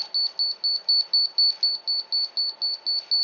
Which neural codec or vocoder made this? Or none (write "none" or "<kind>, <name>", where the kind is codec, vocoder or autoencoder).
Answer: none